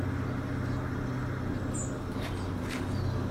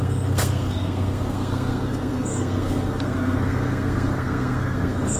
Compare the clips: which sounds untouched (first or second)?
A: first